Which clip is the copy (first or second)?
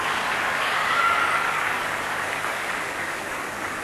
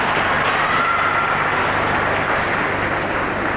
first